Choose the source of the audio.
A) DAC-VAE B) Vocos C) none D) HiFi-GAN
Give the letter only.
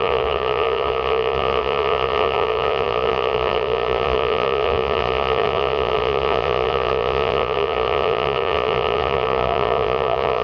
B